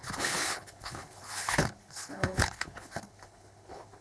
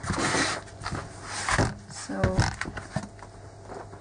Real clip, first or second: second